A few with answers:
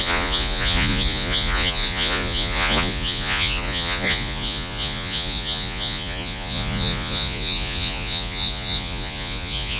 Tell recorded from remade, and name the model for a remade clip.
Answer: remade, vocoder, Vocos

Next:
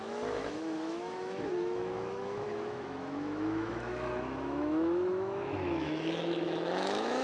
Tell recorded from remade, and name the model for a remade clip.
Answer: remade, autoencoder, DAC-VAE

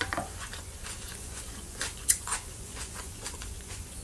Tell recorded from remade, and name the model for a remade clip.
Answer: remade, vocoder, Vocos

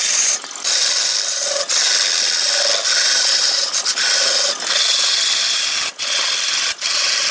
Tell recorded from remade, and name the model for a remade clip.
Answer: recorded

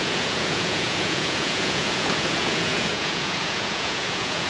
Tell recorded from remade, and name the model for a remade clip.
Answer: remade, vocoder, Vocos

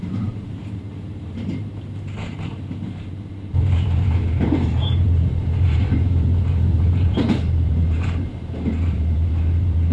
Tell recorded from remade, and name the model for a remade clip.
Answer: remade, vocoder, BigVGAN v2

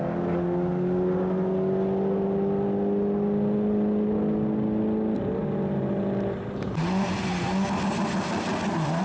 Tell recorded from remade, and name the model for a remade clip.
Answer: recorded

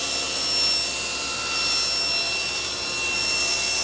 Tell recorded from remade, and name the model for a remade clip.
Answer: recorded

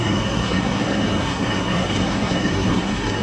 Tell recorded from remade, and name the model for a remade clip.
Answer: remade, codec, SNAC